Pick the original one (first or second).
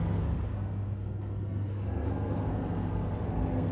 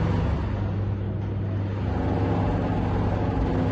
second